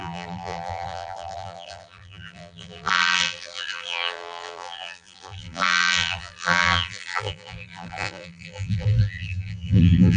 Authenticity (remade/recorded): remade